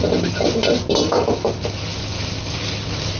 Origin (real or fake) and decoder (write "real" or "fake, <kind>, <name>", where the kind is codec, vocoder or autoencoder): real